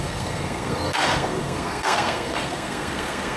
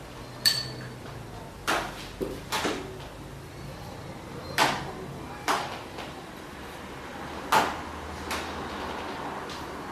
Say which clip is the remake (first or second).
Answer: first